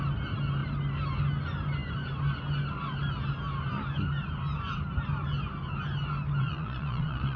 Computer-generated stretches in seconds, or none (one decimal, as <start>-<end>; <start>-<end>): 6.4-7.4